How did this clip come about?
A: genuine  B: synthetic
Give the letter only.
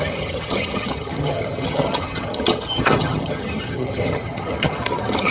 B